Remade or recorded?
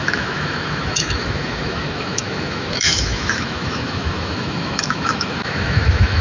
remade